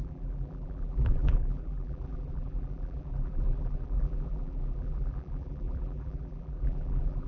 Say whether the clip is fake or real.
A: fake